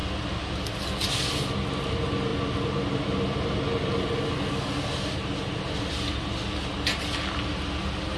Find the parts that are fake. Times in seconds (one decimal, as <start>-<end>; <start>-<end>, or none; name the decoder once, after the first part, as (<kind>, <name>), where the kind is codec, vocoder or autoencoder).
none